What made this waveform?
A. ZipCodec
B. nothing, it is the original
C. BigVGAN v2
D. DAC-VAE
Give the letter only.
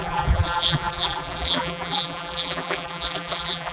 C